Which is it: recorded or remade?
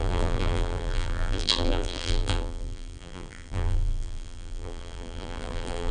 remade